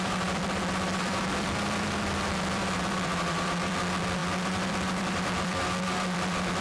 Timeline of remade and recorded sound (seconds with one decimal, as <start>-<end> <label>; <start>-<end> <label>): 0.0-6.6 remade